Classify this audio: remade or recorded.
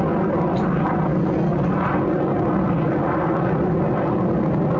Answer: recorded